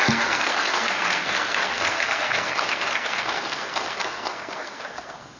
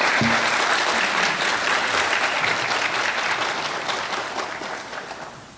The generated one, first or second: first